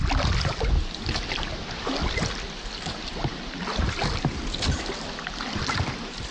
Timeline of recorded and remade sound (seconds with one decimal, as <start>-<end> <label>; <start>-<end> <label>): 0.0-6.3 recorded